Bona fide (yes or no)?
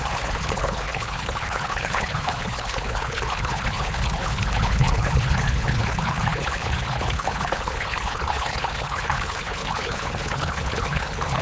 no